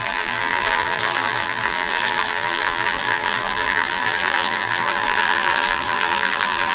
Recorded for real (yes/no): no